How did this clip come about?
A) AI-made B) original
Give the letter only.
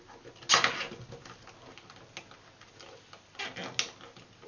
B